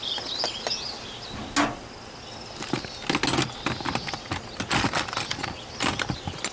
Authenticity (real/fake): real